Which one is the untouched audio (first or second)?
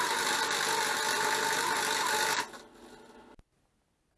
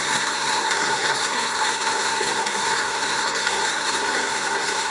first